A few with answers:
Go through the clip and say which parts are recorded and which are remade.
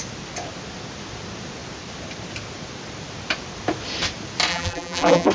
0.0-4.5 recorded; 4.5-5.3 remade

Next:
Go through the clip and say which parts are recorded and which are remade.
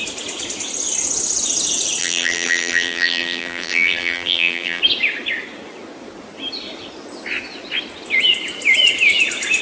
0.0-2.0 recorded; 2.0-4.8 remade; 4.8-9.6 recorded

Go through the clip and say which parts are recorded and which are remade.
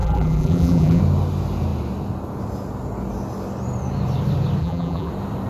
0.0-1.0 remade; 1.0-4.6 recorded; 4.6-5.1 remade; 5.1-5.5 recorded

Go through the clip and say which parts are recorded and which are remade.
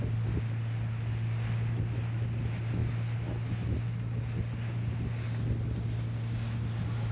0.0-7.1 recorded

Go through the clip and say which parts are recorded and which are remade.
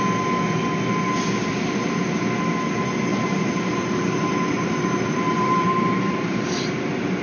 0.0-3.1 recorded; 3.1-6.6 remade; 6.6-7.2 recorded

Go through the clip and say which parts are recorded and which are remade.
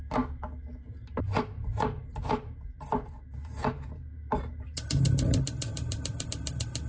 0.0-0.7 recorded; 0.7-4.8 remade; 4.8-5.7 recorded; 5.7-6.3 remade; 6.3-6.9 recorded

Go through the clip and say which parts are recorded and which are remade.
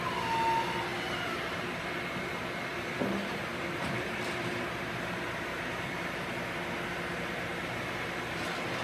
0.0-2.7 recorded; 2.7-4.2 remade; 4.2-5.5 recorded; 5.5-6.1 remade; 6.1-8.8 recorded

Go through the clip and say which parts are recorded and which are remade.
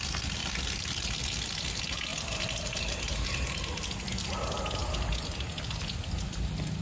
0.0-0.4 recorded; 0.4-1.2 remade; 1.2-2.1 recorded; 2.1-3.5 remade; 3.5-4.8 recorded; 4.8-5.6 remade; 5.6-6.8 recorded